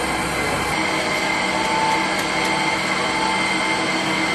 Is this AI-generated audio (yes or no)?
no